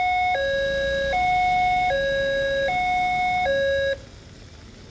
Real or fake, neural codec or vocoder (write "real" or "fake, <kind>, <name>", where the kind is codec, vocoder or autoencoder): real